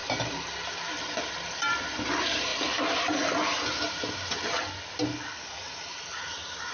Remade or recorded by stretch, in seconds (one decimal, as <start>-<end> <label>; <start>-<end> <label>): 0.0-0.7 recorded; 0.7-2.5 remade; 2.5-5.6 recorded; 5.6-6.7 remade